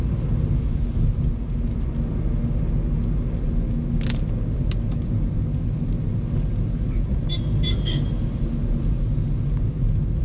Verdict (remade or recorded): recorded